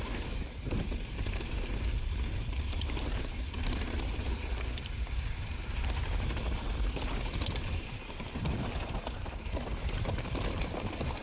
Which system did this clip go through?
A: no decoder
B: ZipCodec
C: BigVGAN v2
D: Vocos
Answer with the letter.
C